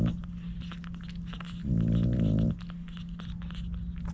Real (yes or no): yes